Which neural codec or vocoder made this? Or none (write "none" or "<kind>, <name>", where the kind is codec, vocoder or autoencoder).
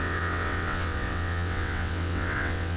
vocoder, WaveNeXt